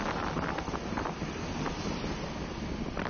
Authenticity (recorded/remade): recorded